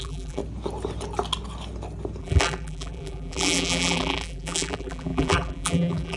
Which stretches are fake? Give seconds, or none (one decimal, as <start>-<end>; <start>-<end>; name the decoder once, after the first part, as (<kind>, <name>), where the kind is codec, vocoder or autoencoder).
0.0-0.4 (vocoder, BigVGAN v2); 2.2-6.2